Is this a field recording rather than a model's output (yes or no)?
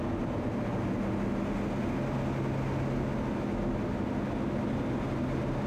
yes